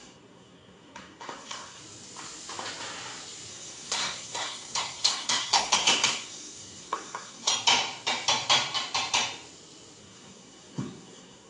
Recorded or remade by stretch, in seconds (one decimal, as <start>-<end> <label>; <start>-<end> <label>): 0.0-1.8 remade; 1.8-3.5 recorded; 3.5-7.5 remade; 7.5-10.0 recorded; 10.0-11.5 remade